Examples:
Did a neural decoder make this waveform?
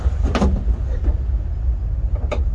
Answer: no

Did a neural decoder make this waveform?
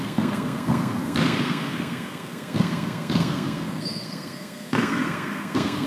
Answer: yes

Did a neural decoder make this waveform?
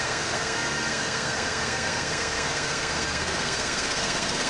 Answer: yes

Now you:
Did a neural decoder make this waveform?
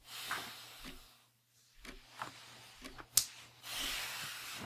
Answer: no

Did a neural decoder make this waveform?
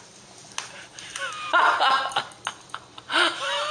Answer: no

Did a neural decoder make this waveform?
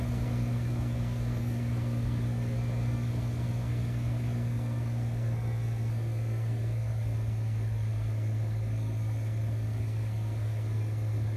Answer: yes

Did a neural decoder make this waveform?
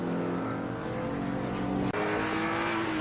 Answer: no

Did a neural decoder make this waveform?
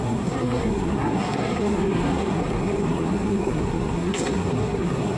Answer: yes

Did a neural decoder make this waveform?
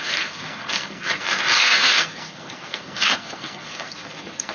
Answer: yes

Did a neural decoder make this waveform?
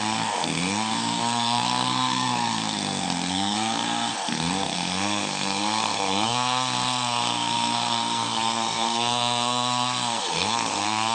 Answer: yes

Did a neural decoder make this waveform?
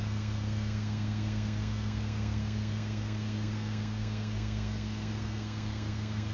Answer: yes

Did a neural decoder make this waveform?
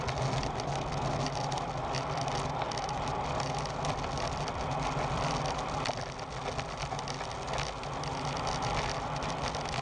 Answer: no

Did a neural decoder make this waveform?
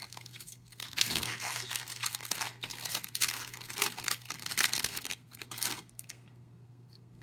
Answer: yes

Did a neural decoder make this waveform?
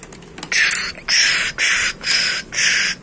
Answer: no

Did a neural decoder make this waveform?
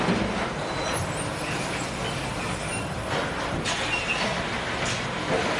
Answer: no